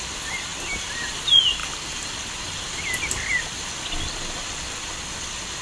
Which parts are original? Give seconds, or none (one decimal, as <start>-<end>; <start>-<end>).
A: 0.0-5.6